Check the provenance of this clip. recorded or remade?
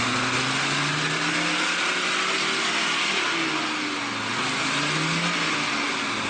recorded